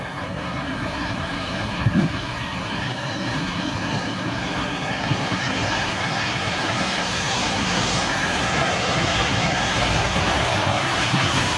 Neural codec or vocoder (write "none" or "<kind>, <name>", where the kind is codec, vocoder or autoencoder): codec, SNAC